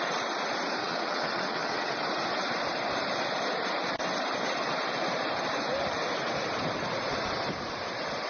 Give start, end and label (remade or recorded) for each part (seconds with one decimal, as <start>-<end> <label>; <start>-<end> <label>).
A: 0.0-0.8 recorded; 0.8-1.9 remade; 1.9-8.3 recorded